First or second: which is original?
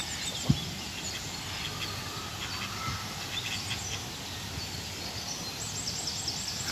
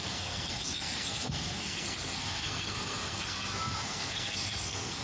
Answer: first